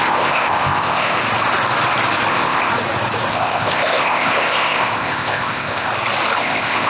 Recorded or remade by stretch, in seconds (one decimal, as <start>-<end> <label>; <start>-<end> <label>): 0.0-1.2 remade; 1.2-2.3 recorded; 2.3-2.7 remade; 2.7-3.3 recorded; 3.3-5.9 remade; 5.9-6.4 recorded; 6.4-6.9 remade